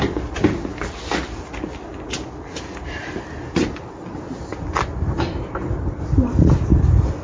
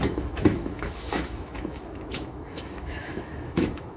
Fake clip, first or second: second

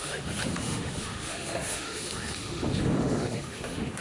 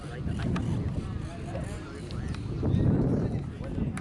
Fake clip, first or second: first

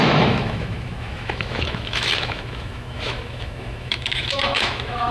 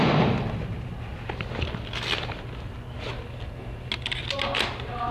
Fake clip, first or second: first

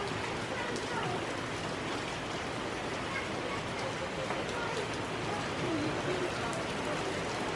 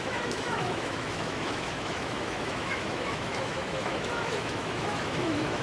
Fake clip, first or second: second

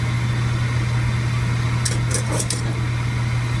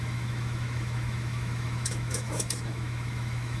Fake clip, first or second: second